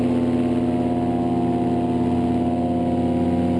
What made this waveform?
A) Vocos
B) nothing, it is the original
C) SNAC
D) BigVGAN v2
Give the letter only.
B